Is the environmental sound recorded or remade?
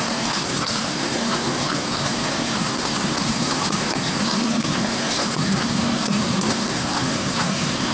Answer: remade